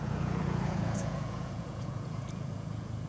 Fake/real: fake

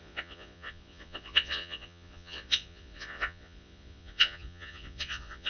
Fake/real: fake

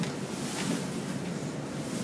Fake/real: real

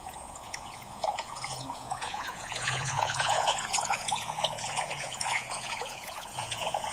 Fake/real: fake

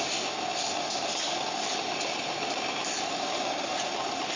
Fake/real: real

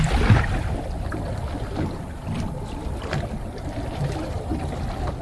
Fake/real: real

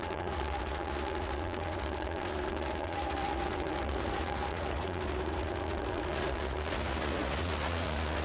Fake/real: fake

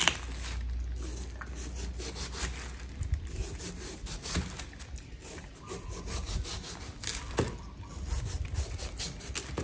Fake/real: real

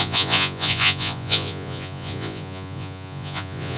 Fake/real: fake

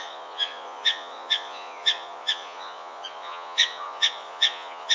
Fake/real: fake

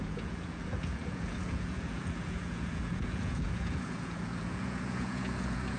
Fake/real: fake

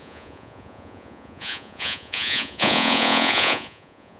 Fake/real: fake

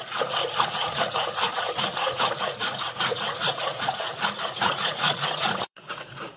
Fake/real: fake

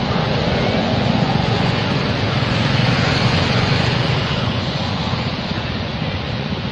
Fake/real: fake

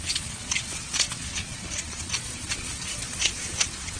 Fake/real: fake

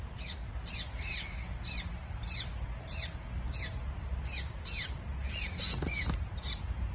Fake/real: real